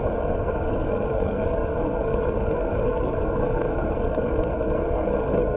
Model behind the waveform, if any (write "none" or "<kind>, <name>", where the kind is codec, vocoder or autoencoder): codec, SNAC